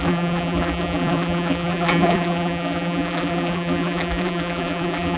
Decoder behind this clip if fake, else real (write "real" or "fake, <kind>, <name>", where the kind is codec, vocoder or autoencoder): fake, vocoder, BigVGAN v2